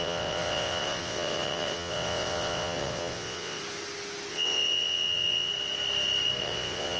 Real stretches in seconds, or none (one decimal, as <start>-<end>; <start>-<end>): 3.6-4.3; 5.5-6.4